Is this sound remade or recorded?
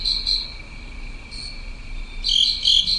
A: recorded